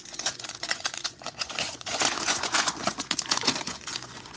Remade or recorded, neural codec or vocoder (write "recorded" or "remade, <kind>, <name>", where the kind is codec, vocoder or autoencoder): remade, vocoder, Vocos